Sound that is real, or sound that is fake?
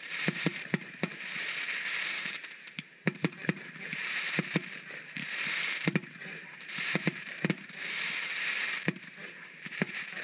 fake